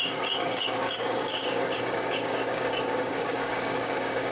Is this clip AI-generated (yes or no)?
yes